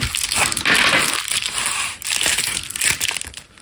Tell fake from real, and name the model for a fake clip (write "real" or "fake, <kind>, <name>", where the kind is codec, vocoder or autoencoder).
real